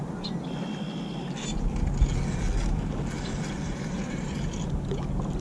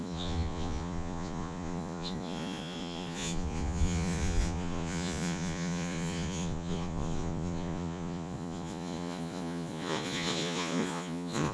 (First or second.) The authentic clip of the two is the first